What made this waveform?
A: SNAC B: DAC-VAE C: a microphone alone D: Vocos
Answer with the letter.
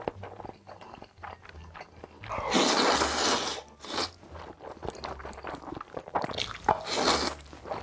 C